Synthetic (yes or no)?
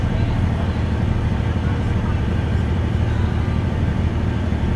no